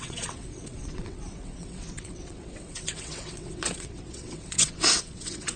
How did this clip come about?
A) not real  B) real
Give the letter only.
A